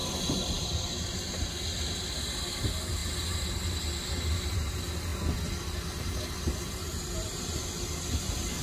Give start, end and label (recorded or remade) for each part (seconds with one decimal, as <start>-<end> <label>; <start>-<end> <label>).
0.0-8.6 recorded